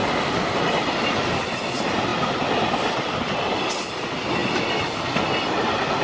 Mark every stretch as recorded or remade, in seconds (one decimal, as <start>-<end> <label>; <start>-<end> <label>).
0.0-0.9 remade; 0.9-2.1 recorded; 2.1-3.3 remade; 3.3-6.0 recorded